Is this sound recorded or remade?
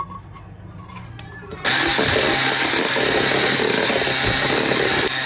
recorded